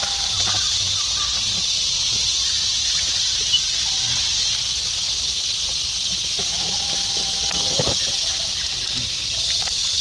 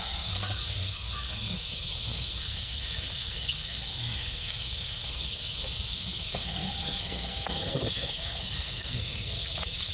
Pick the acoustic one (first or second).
first